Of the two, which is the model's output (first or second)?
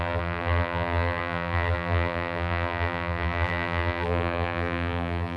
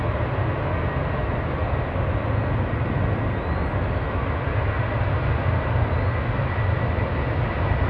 first